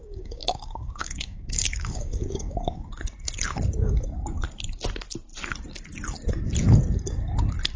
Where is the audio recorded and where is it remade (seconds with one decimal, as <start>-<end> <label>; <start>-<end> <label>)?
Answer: 0.0-2.9 remade; 2.9-7.8 recorded